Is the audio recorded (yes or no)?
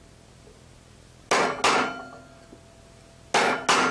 yes